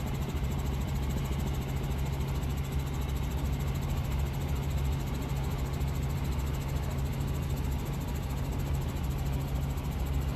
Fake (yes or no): no